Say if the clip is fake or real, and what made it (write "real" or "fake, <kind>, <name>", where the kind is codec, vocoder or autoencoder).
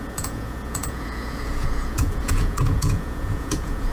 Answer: fake, vocoder, Vocos